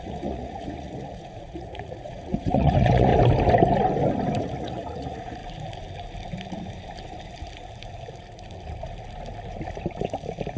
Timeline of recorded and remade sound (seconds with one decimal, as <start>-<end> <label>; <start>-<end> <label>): 0.0-3.1 remade; 3.1-4.4 recorded; 4.4-5.4 remade; 5.4-10.6 recorded